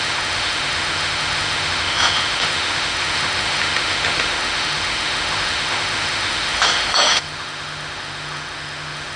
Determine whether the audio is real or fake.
fake